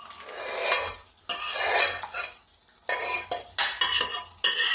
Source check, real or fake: real